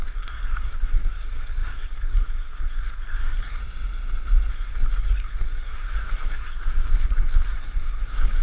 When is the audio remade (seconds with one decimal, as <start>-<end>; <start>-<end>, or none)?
0.0-3.6; 4.5-8.4